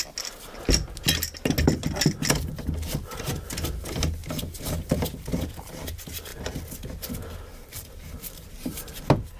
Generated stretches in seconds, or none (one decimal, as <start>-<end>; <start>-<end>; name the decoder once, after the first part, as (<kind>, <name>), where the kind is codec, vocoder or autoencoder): 4.2-4.8 (vocoder, BigVGAN v2); 7.5-9.0